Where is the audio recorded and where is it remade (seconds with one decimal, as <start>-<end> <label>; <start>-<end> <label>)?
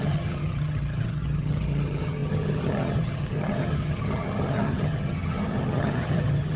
0.0-6.6 remade